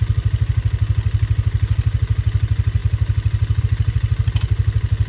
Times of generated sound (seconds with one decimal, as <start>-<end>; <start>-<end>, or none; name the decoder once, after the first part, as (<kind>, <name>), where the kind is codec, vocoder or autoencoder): none